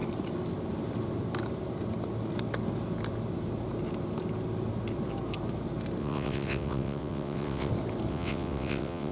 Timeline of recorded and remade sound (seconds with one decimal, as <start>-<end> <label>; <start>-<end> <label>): 0.0-6.0 recorded; 6.0-7.7 remade; 7.7-8.1 recorded; 8.1-9.1 remade